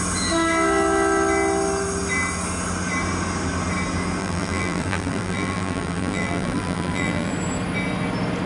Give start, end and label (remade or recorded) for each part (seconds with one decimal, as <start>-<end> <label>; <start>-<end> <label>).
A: 0.0-4.2 recorded; 4.2-7.3 remade; 7.3-8.5 recorded